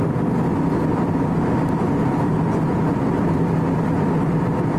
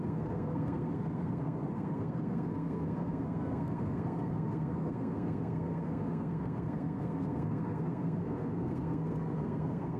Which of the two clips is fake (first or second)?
second